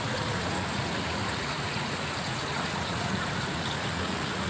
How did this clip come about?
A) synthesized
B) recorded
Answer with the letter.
A